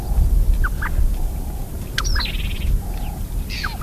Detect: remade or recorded recorded